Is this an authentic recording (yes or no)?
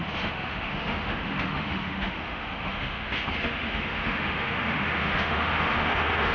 no